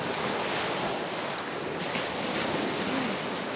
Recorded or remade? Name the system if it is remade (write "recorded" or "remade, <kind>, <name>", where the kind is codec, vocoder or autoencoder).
recorded